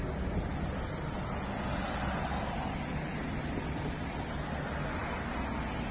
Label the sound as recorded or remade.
recorded